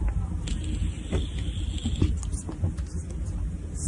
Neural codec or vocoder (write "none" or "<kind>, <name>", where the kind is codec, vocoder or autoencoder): none